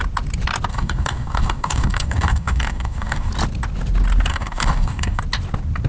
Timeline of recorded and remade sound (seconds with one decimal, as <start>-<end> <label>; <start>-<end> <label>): 0.0-0.7 recorded; 0.7-3.3 remade; 3.3-4.3 recorded; 4.3-5.2 remade; 5.2-5.9 recorded